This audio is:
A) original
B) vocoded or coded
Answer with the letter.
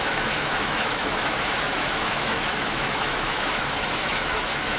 B